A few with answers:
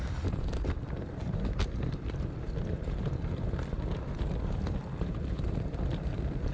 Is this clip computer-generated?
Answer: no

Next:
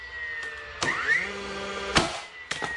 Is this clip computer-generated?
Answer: no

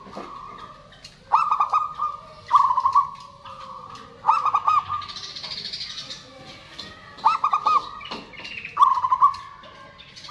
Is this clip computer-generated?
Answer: no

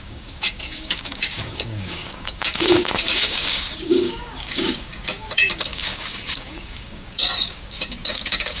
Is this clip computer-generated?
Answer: yes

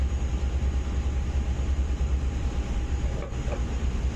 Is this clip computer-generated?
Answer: no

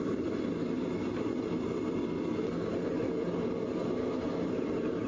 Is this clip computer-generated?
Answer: no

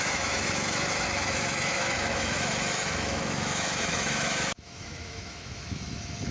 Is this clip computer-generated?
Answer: yes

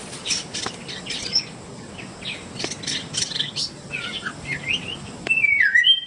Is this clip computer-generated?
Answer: no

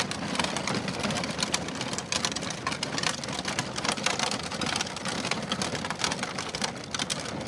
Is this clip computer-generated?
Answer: no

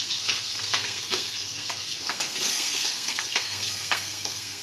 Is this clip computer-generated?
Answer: yes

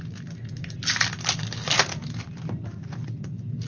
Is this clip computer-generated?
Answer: no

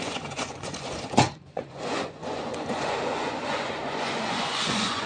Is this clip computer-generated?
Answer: yes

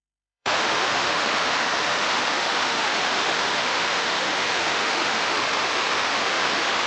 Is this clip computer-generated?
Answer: yes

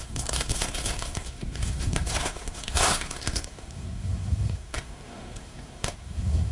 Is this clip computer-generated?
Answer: yes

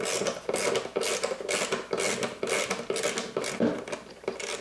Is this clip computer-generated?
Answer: no